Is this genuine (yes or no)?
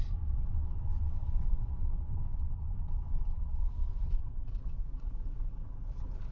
no